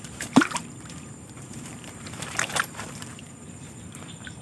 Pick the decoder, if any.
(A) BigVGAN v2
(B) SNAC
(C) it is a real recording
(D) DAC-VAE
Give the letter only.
A